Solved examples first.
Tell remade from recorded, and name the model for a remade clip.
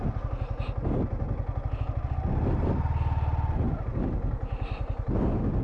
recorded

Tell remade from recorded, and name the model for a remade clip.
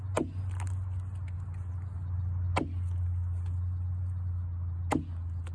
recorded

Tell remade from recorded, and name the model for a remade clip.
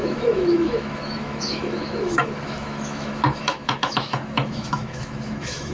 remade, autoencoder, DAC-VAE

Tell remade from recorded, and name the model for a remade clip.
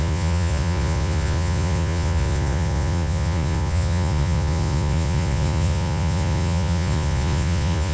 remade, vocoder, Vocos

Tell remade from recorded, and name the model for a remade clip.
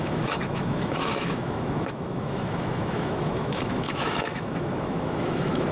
remade, autoencoder, DAC-VAE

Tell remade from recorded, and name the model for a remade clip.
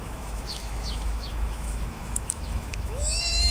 remade, autoencoder, DAC-VAE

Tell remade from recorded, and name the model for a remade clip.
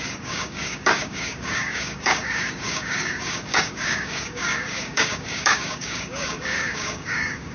remade, codec, DAC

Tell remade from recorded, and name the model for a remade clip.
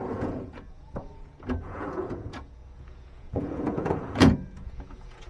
remade, vocoder, Vocos